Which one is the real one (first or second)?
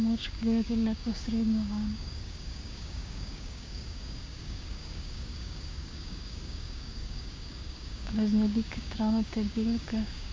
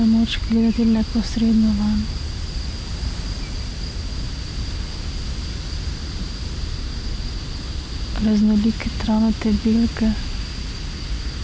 second